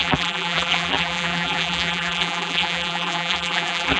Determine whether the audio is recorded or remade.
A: remade